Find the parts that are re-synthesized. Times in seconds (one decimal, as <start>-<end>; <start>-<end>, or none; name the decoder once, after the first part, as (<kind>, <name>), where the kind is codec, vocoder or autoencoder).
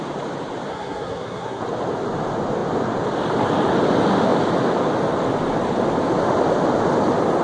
0.7-1.6 (codec, SNAC)